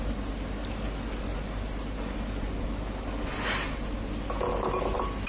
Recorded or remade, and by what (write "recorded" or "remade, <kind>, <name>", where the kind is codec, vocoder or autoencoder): recorded